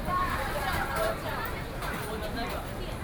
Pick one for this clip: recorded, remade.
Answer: recorded